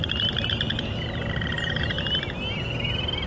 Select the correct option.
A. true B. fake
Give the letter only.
A